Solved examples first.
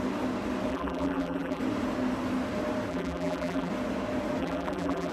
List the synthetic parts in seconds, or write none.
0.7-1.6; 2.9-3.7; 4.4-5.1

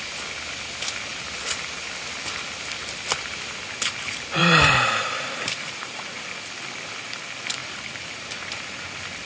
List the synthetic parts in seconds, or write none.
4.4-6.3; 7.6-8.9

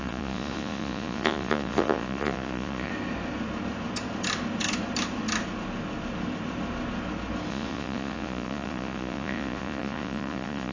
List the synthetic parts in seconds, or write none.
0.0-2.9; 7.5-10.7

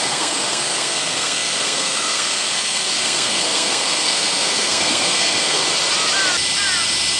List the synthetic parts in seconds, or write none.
0.0-5.6

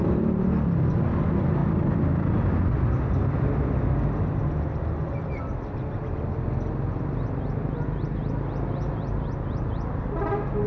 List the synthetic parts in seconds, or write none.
none

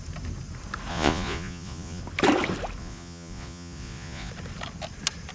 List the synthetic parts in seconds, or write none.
0.9-2.0; 2.8-4.3